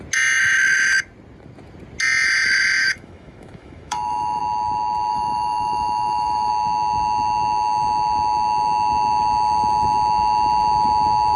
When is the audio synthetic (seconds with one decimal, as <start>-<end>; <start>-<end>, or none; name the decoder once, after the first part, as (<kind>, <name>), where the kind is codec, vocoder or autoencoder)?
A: 2.8-4.4 (autoencoder, DAC-VAE); 5.1-6.5